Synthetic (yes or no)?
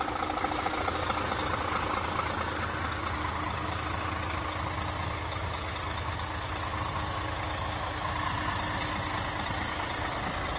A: no